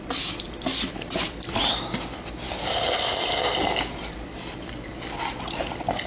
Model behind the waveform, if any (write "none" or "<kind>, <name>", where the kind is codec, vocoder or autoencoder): none